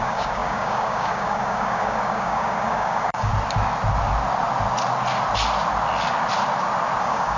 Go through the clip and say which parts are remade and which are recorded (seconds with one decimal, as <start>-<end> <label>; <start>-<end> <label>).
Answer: 0.0-3.3 remade; 3.3-7.0 recorded; 7.0-7.4 remade